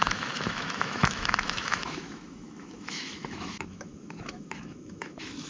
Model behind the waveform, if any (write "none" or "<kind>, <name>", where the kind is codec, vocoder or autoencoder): autoencoder, DAC-VAE